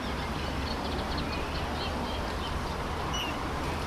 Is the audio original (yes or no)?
yes